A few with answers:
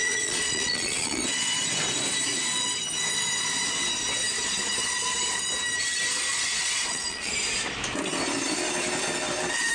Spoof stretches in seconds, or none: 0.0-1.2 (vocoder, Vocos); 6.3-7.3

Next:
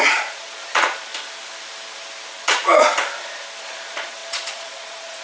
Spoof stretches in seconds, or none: 0.0-1.1 (vocoder, Vocos); 2.3-2.9; 3.6-5.2